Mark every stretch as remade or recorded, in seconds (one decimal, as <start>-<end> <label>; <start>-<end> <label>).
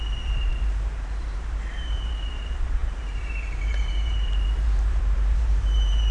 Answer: 0.0-6.1 remade